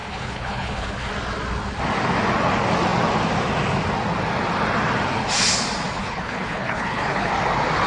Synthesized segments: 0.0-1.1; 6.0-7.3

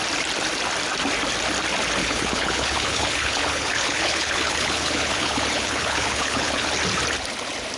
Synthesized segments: 2.0-6.7

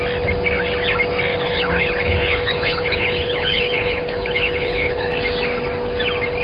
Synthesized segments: 1.3-5.1

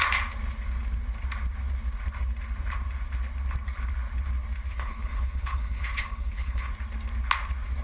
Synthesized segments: 4.7-6.7